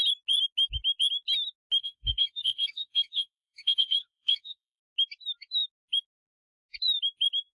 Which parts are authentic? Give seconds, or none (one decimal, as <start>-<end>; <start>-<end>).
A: 0.0-1.8; 4.8-7.6